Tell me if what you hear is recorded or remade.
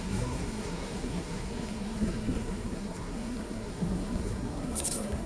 remade